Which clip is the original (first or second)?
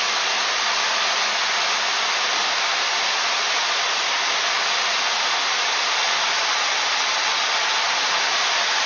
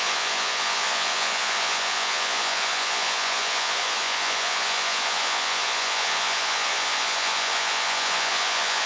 first